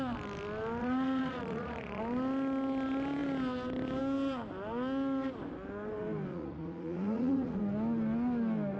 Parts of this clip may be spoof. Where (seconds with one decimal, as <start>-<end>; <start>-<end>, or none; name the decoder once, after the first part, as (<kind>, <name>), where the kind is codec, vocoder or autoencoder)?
0.8-2.0 (vocoder, Vocos); 6.3-7.6